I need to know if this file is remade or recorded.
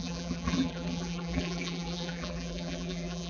remade